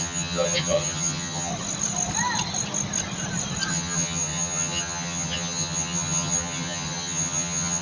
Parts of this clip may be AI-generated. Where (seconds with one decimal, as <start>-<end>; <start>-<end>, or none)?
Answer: 0.0-1.5; 3.7-7.8